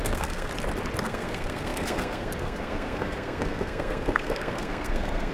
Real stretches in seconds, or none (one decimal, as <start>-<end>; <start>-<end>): 0.5-1.0